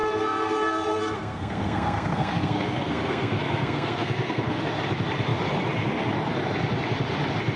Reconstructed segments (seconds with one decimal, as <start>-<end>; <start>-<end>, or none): 0.0-4.6

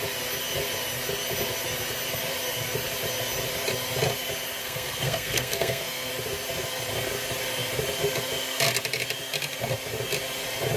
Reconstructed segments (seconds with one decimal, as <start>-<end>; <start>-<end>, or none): 4.6-6.1

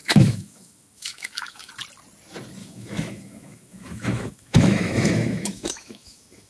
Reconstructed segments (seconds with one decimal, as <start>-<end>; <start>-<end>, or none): 0.0-1.7; 2.6-6.5

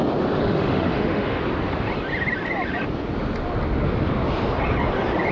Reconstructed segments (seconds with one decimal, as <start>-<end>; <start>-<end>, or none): 0.4-1.4

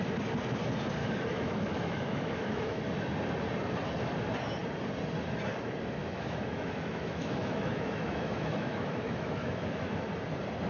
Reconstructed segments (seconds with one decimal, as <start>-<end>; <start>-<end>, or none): 1.0-2.8; 6.0-10.1

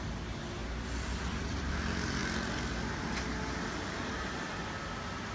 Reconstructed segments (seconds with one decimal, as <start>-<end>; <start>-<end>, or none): none